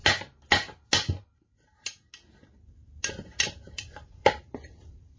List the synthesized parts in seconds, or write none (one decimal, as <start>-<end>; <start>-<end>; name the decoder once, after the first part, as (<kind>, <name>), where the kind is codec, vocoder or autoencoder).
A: 3.1-5.2 (vocoder, BigVGAN v2)